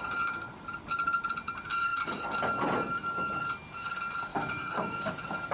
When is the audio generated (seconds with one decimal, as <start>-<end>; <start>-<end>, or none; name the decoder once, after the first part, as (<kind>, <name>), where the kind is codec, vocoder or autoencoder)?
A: 4.3-5.1 (codec, DAC)